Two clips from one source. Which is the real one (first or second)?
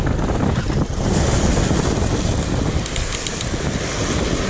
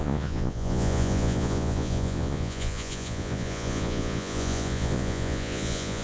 first